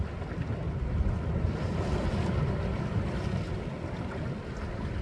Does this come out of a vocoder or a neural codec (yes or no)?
no